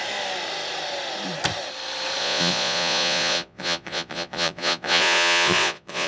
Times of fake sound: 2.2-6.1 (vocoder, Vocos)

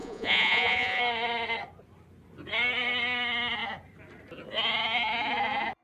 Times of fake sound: 0.0-1.0 (vocoder, Vocos)

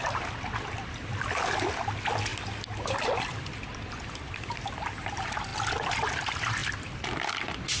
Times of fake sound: 0.0-2.3 (vocoder, BigVGAN v2); 3.2-7.8

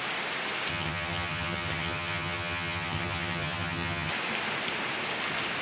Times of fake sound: 0.7-4.1 (vocoder, HiFi-GAN)